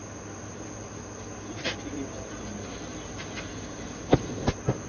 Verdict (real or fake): real